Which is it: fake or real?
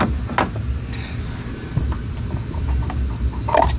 real